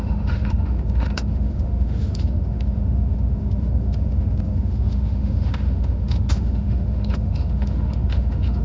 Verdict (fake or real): fake